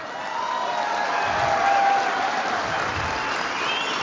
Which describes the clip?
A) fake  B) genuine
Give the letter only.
B